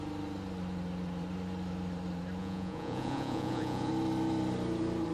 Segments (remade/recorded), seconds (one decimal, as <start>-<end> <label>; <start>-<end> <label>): 0.0-2.4 recorded; 2.4-3.9 remade; 3.9-5.1 recorded

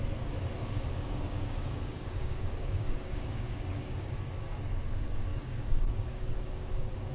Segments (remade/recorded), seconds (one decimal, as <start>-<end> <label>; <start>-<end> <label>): 0.0-0.6 recorded; 0.6-4.1 remade; 4.1-5.3 recorded; 5.3-7.1 remade

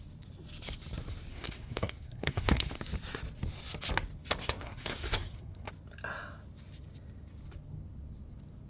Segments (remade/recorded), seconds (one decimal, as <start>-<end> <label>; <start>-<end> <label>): 0.0-1.3 recorded; 1.3-2.8 remade; 2.8-4.4 recorded; 4.4-5.7 remade; 5.7-8.7 recorded